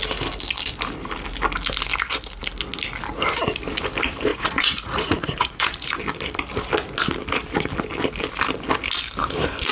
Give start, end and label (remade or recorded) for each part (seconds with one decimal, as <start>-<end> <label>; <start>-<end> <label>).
0.0-4.3 recorded; 4.3-6.0 remade; 6.0-9.7 recorded